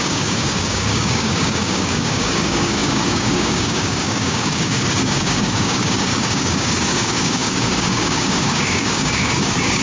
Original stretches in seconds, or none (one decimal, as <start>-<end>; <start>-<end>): none